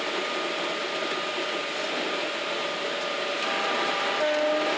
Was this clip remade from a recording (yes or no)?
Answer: no